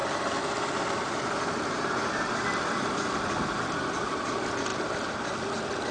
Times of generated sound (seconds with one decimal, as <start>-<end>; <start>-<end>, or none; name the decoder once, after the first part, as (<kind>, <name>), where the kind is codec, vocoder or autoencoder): none